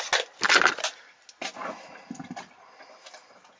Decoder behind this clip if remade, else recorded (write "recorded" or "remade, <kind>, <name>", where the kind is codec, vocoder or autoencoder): recorded